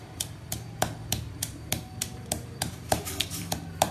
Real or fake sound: fake